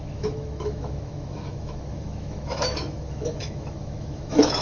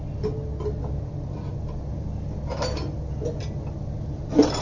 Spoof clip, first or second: first